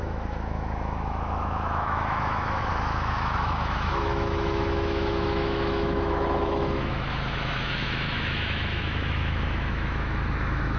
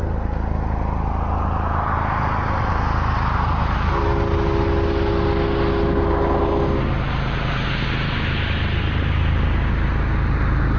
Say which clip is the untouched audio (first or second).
second